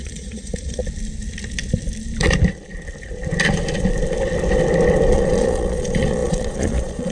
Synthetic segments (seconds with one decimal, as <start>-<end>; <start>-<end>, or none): 0.0-0.8; 5.1-7.1